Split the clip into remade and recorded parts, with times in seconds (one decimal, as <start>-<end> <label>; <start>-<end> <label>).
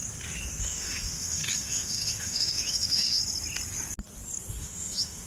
0.0-0.6 recorded; 0.6-3.2 remade; 3.2-4.5 recorded; 4.5-5.3 remade